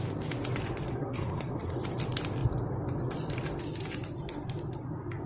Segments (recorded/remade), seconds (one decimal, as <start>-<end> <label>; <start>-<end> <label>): 0.0-0.9 recorded; 0.9-1.8 remade; 1.8-5.3 recorded